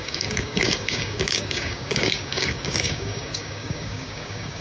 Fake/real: fake